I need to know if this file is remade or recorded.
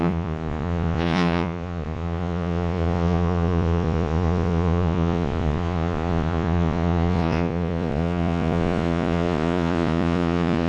remade